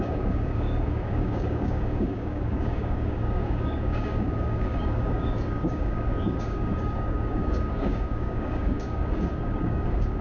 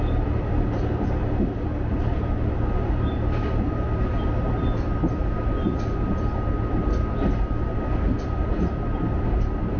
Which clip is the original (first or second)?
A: second